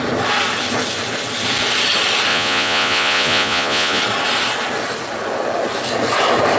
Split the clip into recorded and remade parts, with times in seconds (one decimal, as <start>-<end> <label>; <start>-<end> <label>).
0.0-2.3 recorded; 2.3-4.0 remade; 4.0-6.6 recorded